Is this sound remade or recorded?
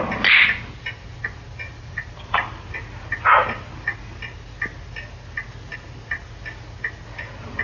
recorded